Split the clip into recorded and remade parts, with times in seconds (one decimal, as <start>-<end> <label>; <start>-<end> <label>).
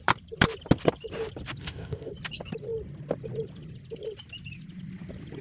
0.0-1.6 recorded; 1.6-2.1 remade; 2.1-5.4 recorded